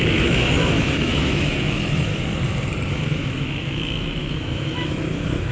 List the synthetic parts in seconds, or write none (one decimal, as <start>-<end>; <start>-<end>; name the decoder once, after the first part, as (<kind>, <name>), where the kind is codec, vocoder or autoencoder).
0.0-2.1 (autoencoder, DAC-VAE); 2.9-5.5